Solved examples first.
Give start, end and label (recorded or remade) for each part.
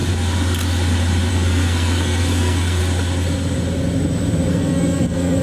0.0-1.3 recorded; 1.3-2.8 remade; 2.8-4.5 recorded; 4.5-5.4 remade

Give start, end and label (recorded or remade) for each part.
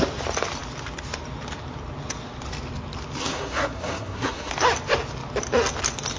0.0-3.2 recorded; 3.2-4.5 remade; 4.5-6.2 recorded